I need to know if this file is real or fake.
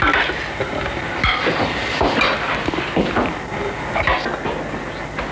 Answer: real